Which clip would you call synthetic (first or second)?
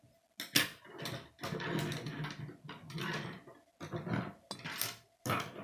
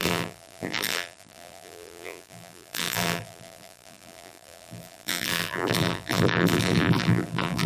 second